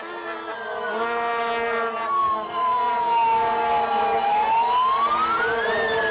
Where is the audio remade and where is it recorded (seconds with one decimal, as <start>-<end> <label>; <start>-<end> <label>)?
0.0-6.1 recorded